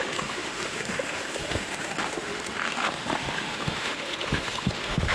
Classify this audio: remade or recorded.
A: remade